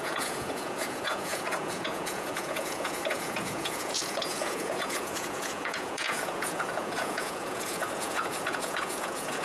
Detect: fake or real fake